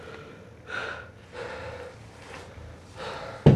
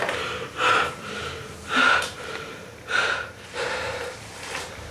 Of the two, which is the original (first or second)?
first